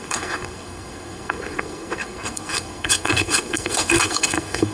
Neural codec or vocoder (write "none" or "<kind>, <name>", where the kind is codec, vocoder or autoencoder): codec, SNAC